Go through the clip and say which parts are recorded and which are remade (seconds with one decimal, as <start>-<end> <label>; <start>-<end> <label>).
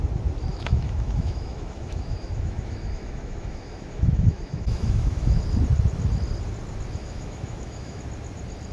0.0-0.5 recorded; 0.5-5.4 remade; 5.4-7.0 recorded; 7.0-8.0 remade; 8.0-8.7 recorded